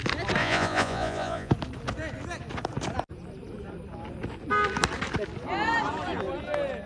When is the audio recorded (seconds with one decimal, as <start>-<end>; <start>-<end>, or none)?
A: 0.0-0.4; 1.5-6.9